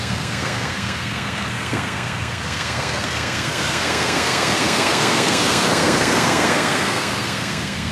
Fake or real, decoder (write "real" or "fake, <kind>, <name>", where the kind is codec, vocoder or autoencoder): fake, codec, SNAC